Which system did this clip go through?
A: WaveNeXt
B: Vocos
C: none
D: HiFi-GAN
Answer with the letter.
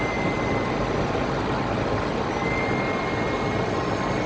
C